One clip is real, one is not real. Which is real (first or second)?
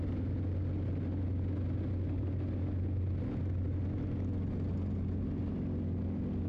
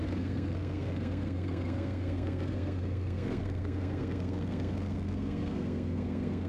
first